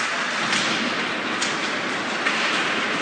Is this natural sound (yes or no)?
yes